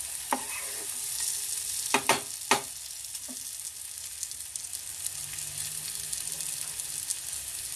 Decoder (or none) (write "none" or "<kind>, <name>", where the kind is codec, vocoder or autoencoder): none